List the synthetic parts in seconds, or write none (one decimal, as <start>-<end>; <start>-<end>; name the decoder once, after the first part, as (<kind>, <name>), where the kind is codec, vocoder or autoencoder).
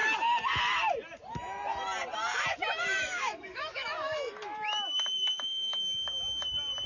2.5-5.8 (autoencoder, DAC-VAE)